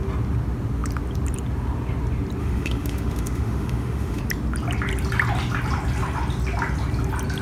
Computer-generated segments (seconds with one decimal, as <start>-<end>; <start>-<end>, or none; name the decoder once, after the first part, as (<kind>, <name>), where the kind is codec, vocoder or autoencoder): 2.4-4.2 (autoencoder, DAC-VAE)